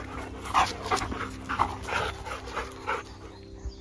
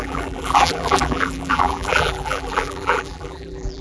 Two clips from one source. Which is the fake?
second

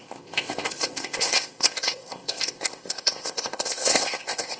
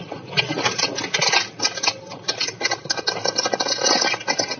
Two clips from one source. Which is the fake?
first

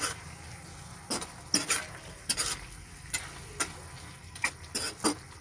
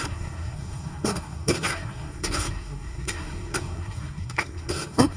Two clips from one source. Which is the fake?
second